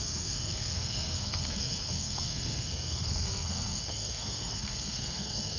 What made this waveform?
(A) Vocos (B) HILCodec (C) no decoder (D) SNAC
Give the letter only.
D